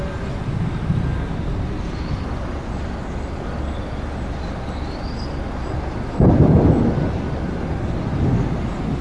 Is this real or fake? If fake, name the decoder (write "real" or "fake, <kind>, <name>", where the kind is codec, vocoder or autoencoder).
real